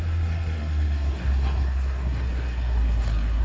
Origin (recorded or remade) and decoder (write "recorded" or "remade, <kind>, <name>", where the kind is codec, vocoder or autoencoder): remade, codec, SNAC